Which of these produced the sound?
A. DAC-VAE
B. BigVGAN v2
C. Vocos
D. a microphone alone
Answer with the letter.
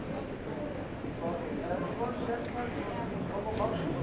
D